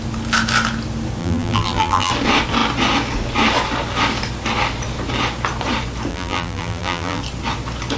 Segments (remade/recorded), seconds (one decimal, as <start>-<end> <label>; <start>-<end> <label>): 0.0-1.2 recorded; 1.2-2.1 remade; 2.1-6.1 recorded; 6.1-7.2 remade; 7.2-8.0 recorded